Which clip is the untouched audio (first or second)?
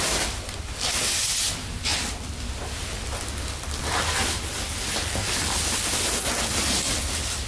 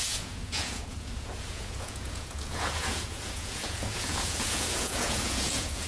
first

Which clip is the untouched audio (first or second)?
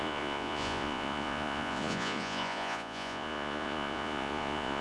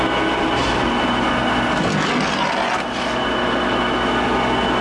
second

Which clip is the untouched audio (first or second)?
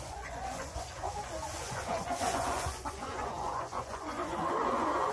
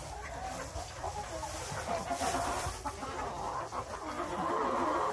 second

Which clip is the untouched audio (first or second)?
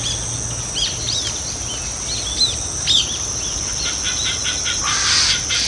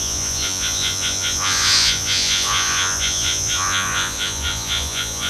first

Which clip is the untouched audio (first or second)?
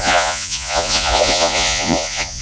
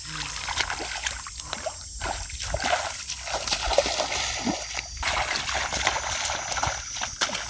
second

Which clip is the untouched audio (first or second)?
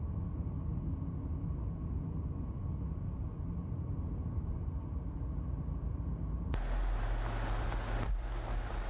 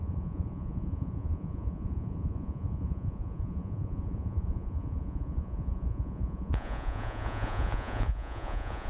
first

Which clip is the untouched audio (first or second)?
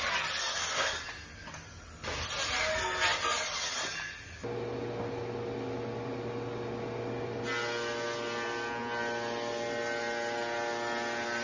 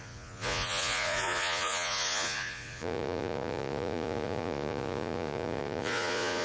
first